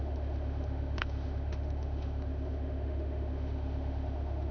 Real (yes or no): no